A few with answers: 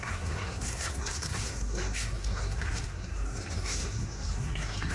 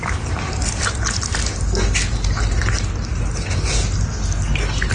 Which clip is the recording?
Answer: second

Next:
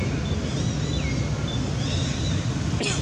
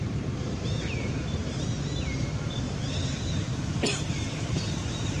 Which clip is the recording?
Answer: first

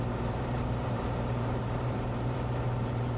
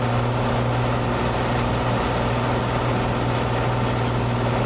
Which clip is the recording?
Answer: second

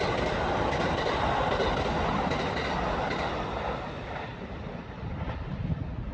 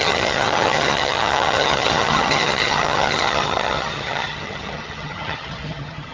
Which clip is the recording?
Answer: first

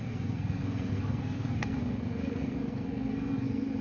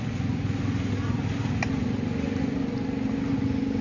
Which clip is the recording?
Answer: second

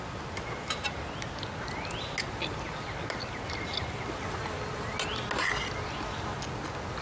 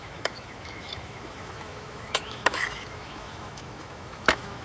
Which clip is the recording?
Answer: first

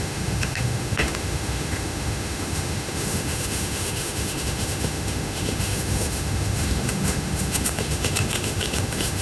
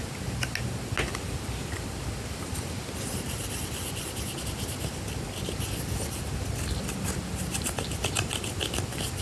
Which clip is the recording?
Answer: second